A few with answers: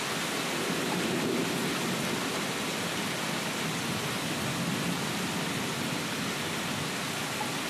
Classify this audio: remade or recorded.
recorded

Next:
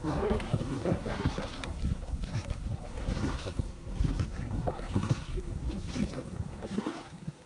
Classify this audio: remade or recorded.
remade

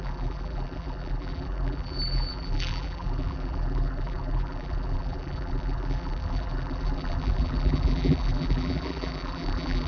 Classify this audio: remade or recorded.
remade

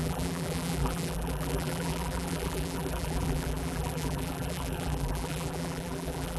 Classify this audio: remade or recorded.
remade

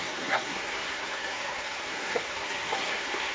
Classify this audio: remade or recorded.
remade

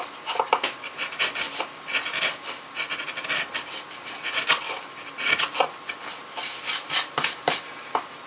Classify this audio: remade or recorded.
remade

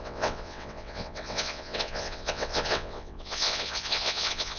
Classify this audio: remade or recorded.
remade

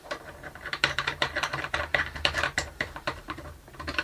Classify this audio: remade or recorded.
remade